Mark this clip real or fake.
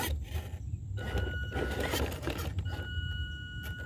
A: real